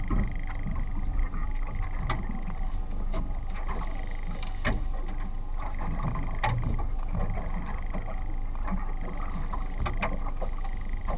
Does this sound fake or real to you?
real